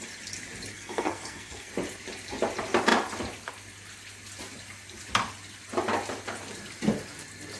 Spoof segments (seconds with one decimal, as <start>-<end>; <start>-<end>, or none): 0.7-1.7